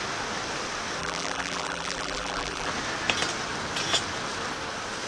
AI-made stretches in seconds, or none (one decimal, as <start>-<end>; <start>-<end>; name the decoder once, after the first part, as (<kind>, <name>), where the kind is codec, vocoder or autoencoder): 1.0-2.7 (vocoder, BigVGAN v2)